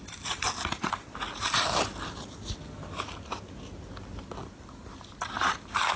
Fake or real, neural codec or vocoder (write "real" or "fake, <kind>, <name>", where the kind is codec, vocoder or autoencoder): real